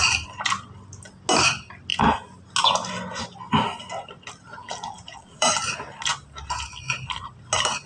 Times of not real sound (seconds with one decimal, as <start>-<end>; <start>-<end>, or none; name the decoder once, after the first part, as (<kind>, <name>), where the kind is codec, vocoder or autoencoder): 4.6-5.6 (vocoder, BigVGAN v2)